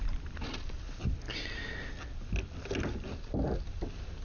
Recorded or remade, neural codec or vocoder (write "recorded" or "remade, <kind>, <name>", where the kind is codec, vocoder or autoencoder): recorded